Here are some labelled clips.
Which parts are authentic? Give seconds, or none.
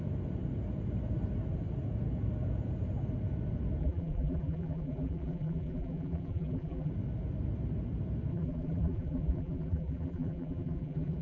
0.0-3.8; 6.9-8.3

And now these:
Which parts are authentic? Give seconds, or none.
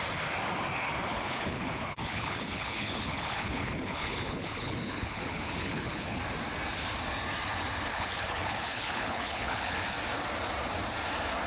0.0-1.1; 6.2-7.9; 9.8-11.5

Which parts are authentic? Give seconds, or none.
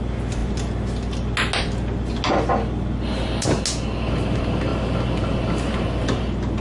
0.0-6.6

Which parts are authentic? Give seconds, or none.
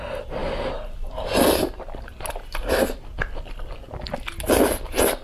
0.0-5.2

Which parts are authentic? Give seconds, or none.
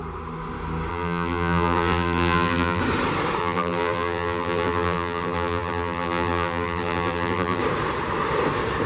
0.0-0.9; 2.8-3.4; 7.6-8.9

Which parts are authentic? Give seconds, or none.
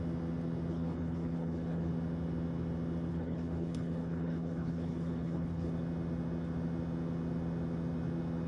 0.0-0.7; 1.9-3.1; 5.7-8.5